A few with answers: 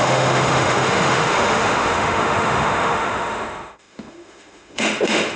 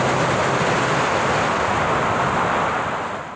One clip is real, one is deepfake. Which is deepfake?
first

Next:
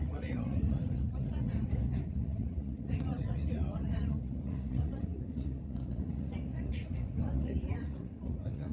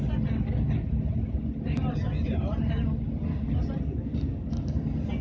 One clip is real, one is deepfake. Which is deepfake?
first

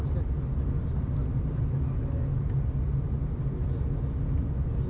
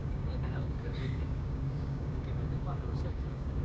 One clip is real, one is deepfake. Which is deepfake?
second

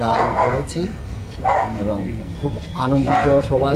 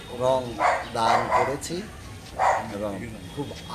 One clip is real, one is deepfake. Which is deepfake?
first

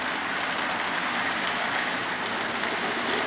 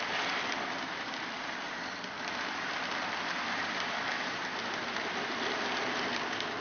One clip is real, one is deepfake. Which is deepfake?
second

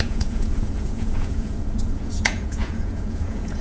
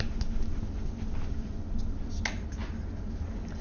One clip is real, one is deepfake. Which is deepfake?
first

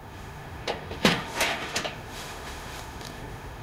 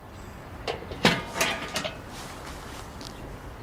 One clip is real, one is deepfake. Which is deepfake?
first